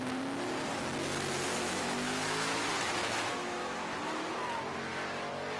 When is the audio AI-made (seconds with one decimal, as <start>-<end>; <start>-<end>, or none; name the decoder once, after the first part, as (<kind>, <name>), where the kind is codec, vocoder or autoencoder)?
1.5-4.3 (autoencoder, DAC-VAE)